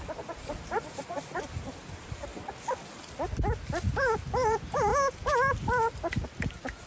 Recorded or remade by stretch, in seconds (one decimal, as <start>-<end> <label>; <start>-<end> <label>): 0.0-2.3 remade; 2.3-4.3 recorded; 4.3-4.9 remade; 4.9-6.9 recorded

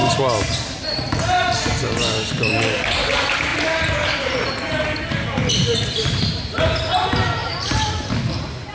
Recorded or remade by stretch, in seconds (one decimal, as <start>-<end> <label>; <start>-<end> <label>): 0.0-3.1 remade; 3.1-3.5 recorded; 3.5-4.5 remade; 4.5-7.4 recorded; 7.4-8.7 remade

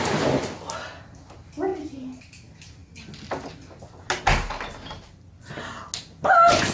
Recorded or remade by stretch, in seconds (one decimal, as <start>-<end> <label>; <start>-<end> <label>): 0.0-6.7 recorded

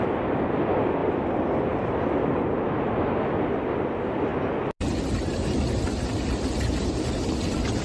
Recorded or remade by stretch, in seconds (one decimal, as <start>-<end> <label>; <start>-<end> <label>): 0.0-1.0 recorded; 1.0-2.2 remade; 2.2-7.8 recorded